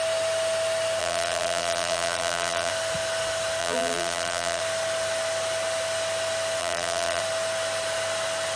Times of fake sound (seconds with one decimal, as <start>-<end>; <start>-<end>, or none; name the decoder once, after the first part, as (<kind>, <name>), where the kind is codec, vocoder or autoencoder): 1.0-2.7 (vocoder, BigVGAN v2); 3.6-4.6; 6.6-7.2

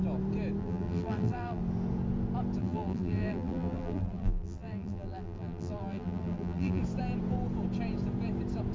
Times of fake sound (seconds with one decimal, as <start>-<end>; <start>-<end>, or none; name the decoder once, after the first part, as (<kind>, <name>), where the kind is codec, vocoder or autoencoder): 0.6-1.6 (vocoder, BigVGAN v2); 2.6-6.8

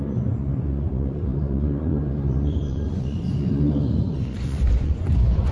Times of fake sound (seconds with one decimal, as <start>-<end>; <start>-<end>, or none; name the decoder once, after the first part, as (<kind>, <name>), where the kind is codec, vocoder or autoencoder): 0.0-5.5 (vocoder, Vocos)

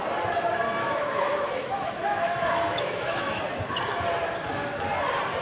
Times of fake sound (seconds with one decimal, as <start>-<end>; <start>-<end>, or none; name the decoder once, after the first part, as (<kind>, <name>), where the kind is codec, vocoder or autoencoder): 0.8-3.4 (autoencoder, DAC-VAE)

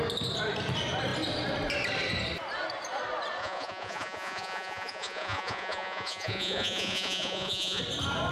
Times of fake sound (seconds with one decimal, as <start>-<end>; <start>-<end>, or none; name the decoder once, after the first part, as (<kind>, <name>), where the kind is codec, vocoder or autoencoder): 3.4-7.8 (vocoder, Vocos)